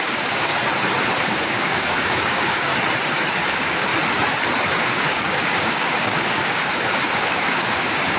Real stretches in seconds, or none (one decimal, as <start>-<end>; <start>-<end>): 0.5-1.2; 2.7-3.5; 3.9-4.8